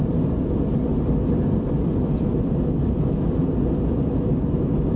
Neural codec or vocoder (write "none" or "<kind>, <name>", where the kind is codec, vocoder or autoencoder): none